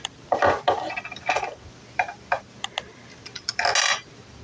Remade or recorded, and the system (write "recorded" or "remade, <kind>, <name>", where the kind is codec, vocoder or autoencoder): recorded